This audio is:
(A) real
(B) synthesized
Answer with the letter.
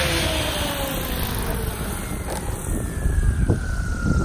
A